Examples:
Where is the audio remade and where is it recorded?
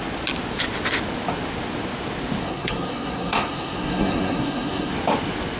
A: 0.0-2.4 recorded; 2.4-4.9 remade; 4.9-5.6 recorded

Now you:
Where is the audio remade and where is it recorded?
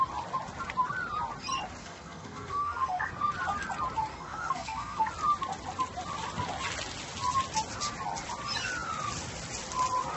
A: 0.0-1.8 recorded; 1.8-3.1 remade; 3.1-4.1 recorded; 4.1-5.1 remade; 5.1-10.2 recorded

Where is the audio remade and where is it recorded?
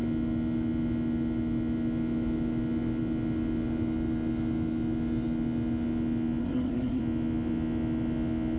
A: 0.0-6.4 recorded; 6.4-7.0 remade; 7.0-8.6 recorded